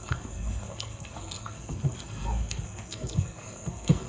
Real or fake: fake